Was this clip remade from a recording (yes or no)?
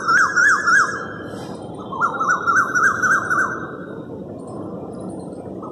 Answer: no